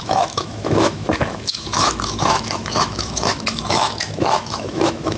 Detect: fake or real fake